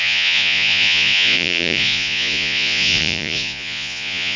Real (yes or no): no